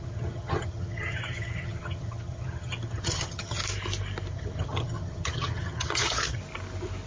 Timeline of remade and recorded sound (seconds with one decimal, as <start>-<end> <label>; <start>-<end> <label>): 0.0-3.6 remade; 3.6-4.3 recorded; 4.3-6.4 remade; 6.4-7.1 recorded